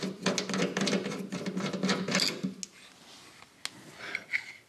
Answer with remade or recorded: recorded